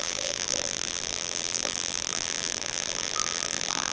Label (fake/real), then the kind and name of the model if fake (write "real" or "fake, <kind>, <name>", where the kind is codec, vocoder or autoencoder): fake, vocoder, BigVGAN v2